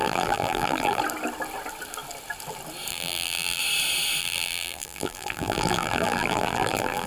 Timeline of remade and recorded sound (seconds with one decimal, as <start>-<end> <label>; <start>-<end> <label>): 0.0-1.0 remade; 1.0-2.9 recorded; 2.9-3.6 remade; 3.6-4.2 recorded; 4.2-7.1 remade